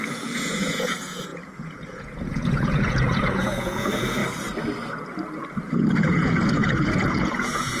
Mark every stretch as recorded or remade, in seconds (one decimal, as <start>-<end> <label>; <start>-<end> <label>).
0.0-4.2 remade; 4.2-6.0 recorded; 6.0-7.8 remade